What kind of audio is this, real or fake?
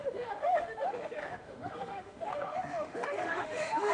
fake